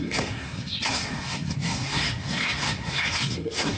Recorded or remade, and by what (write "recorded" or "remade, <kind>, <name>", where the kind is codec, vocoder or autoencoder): remade, codec, SNAC